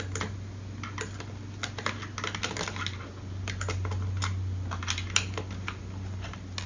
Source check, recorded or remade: recorded